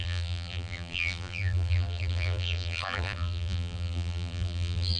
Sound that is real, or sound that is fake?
fake